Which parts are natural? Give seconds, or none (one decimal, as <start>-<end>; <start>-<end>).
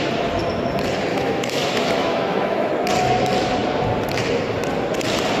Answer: 0.0-1.1; 2.7-5.4